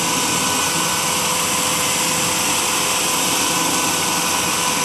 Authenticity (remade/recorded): recorded